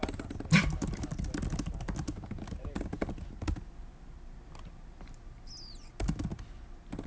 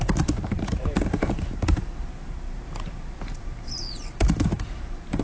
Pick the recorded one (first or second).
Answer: first